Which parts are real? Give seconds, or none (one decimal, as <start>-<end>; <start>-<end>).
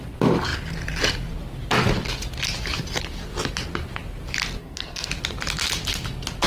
0.0-4.6; 5.1-6.5